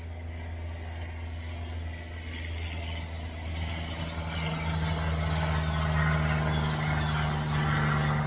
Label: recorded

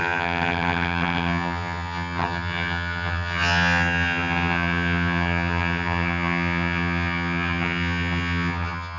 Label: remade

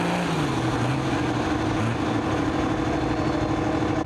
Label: recorded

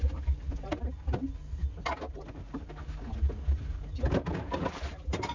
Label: recorded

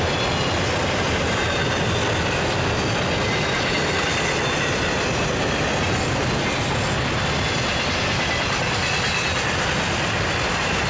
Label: recorded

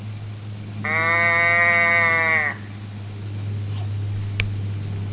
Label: recorded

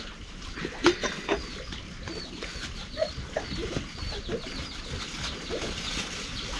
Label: recorded